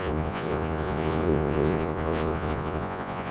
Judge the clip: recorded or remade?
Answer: remade